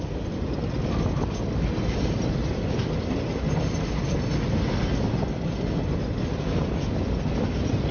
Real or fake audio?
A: real